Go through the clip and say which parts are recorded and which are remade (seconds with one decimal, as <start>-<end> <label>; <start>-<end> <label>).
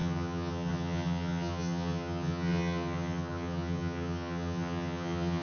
0.0-5.4 remade